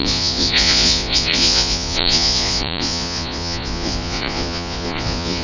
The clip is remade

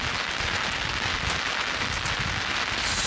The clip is recorded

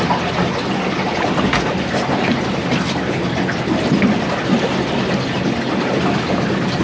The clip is recorded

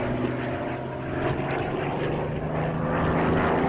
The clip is recorded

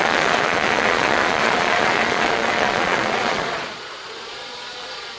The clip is remade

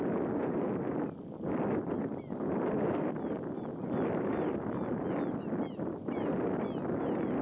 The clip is recorded